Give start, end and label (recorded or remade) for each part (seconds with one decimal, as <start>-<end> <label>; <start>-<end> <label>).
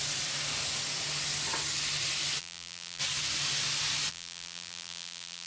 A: 0.0-2.4 recorded; 2.4-3.0 remade; 3.0-4.1 recorded; 4.1-5.5 remade